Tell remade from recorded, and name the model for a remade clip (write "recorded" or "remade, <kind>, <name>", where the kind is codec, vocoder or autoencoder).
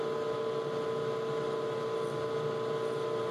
recorded